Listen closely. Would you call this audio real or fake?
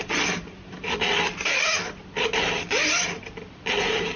real